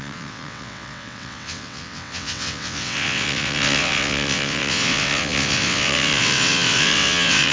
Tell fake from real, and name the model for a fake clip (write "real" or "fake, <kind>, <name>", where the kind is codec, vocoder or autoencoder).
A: fake, vocoder, WaveNeXt